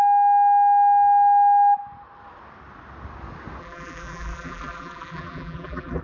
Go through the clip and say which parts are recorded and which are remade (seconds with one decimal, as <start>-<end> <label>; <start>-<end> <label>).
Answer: 0.0-3.6 recorded; 3.6-6.0 remade